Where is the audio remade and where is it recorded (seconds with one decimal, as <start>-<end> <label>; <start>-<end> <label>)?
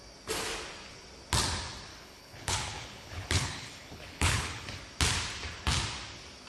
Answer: 0.0-1.9 recorded; 1.9-4.8 remade; 4.8-6.5 recorded